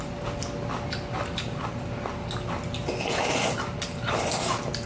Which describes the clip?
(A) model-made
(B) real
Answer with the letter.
B